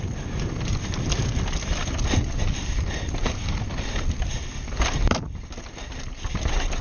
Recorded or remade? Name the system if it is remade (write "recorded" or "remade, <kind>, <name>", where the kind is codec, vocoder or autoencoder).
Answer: recorded